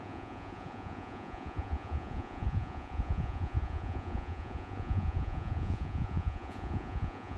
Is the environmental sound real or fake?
fake